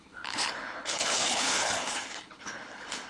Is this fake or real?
fake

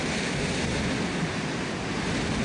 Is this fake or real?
real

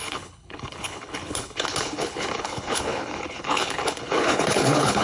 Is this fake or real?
fake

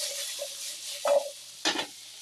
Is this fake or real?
real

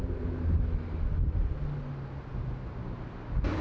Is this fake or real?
real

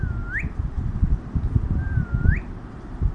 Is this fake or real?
real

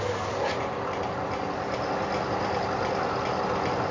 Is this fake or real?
real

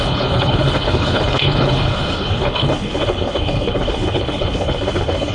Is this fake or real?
fake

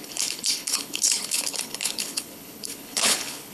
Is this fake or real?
fake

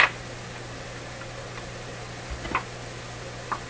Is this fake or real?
real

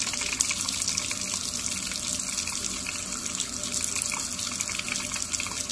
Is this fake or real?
real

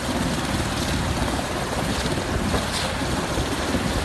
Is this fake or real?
real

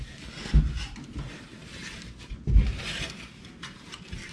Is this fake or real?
real